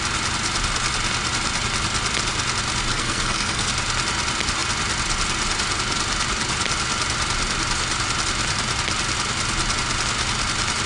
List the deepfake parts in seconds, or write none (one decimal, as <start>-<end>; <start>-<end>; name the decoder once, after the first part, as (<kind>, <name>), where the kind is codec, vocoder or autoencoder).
2.9-3.7 (codec, SNAC)